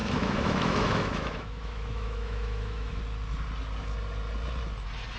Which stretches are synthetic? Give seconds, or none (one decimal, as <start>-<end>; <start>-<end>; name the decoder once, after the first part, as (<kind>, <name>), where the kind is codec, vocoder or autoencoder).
0.0-3.0 (autoencoder, DAC-VAE)